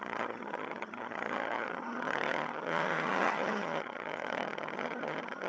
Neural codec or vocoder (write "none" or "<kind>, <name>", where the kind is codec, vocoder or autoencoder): vocoder, HiFi-GAN